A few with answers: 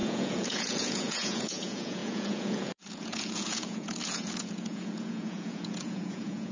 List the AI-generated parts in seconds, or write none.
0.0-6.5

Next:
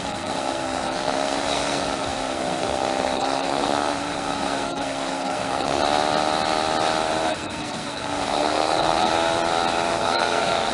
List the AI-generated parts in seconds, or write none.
0.0-5.8; 7.3-9.1; 9.9-10.7

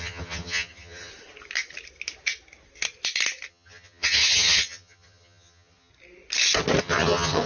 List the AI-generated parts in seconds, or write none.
0.0-1.1; 3.5-5.9; 6.8-7.5

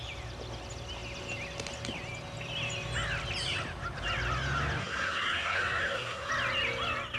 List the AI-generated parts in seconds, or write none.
4.8-6.3

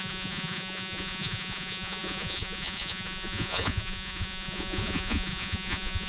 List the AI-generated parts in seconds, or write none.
0.0-6.1

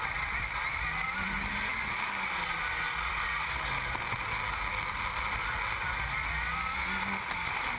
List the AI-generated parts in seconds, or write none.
none